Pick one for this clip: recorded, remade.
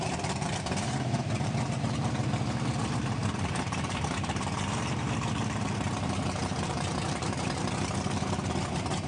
remade